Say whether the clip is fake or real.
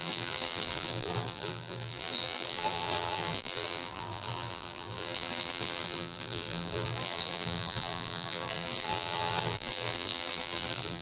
fake